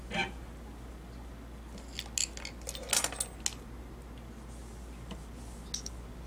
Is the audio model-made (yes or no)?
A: no